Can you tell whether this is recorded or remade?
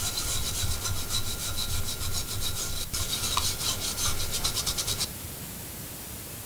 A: recorded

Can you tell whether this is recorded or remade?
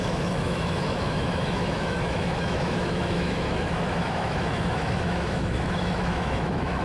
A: remade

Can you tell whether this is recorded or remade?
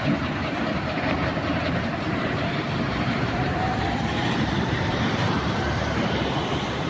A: remade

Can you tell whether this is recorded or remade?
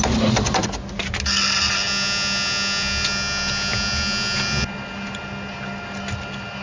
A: recorded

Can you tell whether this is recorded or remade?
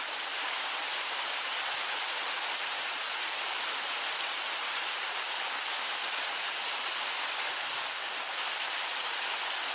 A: recorded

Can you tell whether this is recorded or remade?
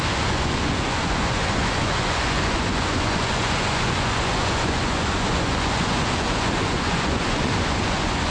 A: remade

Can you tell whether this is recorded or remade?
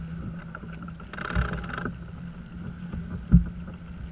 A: recorded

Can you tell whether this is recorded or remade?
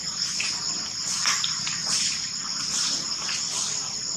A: recorded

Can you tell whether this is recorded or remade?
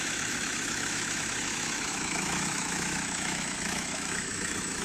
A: remade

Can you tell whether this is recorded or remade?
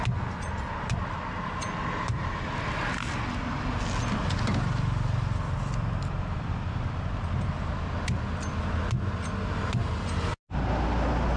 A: recorded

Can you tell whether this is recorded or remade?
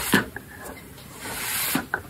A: recorded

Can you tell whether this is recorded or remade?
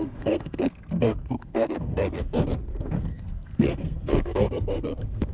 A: remade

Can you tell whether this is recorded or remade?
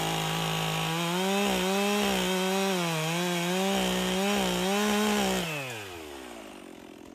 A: recorded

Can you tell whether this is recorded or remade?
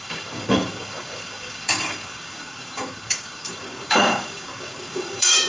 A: remade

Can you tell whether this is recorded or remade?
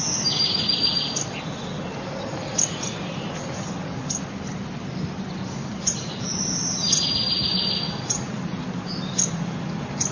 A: recorded